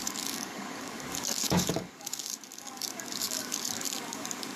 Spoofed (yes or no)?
yes